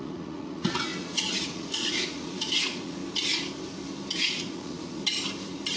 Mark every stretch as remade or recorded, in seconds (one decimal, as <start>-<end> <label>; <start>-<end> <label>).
0.0-3.0 remade; 3.0-4.2 recorded; 4.2-5.0 remade; 5.0-5.8 recorded